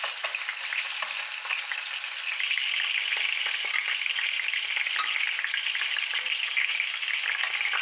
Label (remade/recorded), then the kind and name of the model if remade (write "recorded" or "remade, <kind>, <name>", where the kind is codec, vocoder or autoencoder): recorded